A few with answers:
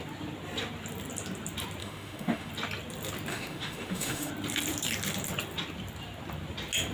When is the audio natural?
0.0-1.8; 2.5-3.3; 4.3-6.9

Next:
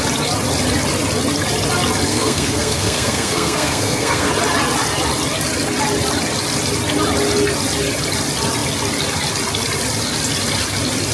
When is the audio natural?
0.0-2.1; 4.3-11.1

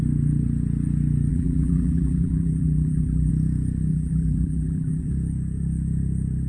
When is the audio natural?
0.0-1.3; 3.3-3.9; 5.1-6.5

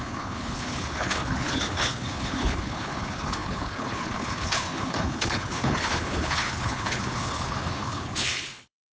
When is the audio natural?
none